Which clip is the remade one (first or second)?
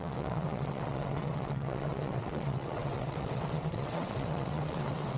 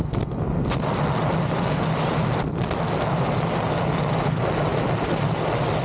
first